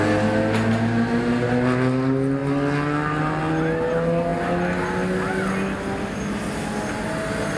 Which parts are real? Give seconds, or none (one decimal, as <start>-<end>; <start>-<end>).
0.0-7.6